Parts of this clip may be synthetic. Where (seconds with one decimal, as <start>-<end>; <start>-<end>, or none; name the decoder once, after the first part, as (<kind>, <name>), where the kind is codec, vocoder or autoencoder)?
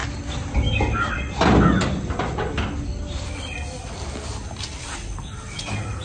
none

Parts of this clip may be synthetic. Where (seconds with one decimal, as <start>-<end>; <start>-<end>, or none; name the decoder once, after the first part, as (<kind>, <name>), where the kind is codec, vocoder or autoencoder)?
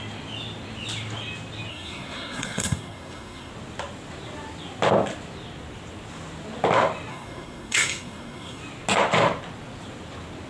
1.7-3.5 (codec, SNAC); 7.1-8.6